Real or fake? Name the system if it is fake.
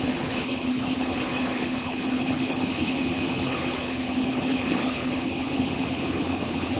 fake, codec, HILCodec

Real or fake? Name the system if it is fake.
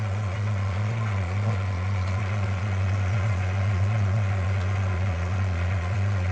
fake, vocoder, Vocos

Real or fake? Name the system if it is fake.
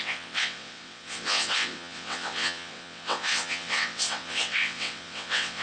fake, vocoder, WaveNeXt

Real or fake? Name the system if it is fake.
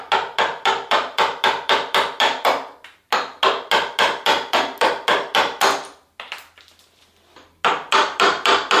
real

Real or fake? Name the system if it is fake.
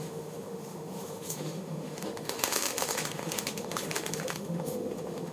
fake, autoencoder, DAC-VAE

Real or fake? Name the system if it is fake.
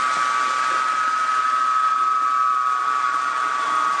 real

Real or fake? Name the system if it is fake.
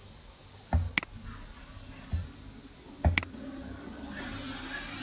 real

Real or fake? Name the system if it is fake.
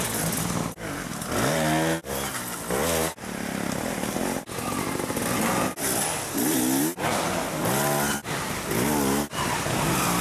real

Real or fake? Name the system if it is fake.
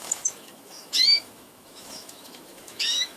fake, autoencoder, DAC-VAE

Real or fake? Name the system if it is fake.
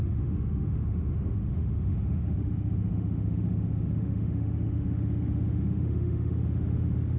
fake, autoencoder, DAC-VAE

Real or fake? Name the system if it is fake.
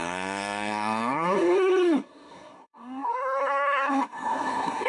fake, codec, SNAC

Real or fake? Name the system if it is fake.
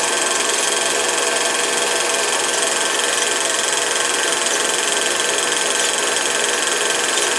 real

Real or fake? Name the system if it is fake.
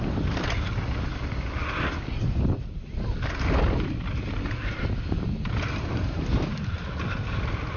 real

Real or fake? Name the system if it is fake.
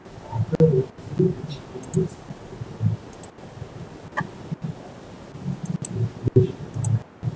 real